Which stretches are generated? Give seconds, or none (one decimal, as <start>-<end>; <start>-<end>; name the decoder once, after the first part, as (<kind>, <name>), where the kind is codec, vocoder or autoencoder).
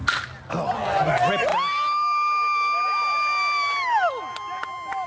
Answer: none